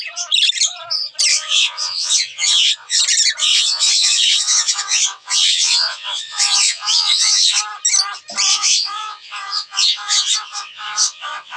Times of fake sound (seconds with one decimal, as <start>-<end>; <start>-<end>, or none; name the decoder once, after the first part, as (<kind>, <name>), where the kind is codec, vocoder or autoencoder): 1.3-3.0 (vocoder, WaveNeXt); 3.4-7.6; 8.5-11.6